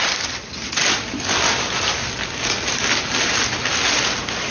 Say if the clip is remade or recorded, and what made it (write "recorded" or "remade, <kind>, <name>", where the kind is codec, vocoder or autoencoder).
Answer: recorded